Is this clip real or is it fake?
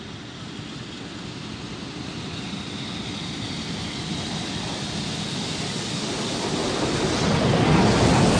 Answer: real